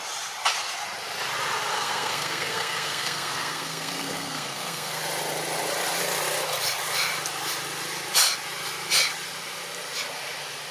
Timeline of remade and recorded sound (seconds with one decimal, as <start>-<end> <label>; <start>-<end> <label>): 0.0-1.7 recorded; 1.7-5.0 remade; 5.0-10.7 recorded